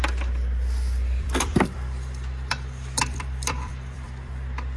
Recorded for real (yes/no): no